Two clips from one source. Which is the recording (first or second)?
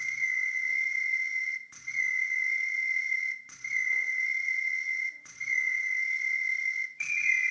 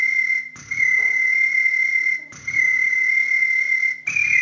second